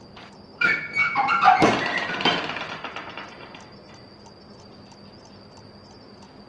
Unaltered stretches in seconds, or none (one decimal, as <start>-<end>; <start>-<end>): 0.0-6.5